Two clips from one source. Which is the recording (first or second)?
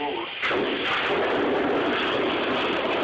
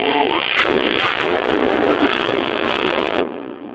first